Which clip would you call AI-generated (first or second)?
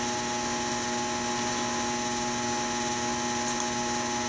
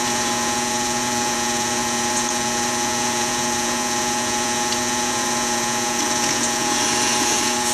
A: second